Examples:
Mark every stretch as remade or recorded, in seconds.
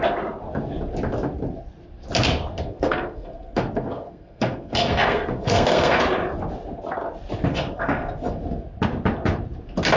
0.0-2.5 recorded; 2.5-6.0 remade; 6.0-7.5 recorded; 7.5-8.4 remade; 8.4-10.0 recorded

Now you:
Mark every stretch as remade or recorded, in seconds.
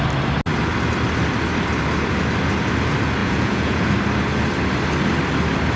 0.0-3.2 recorded; 3.2-3.9 remade; 3.9-5.8 recorded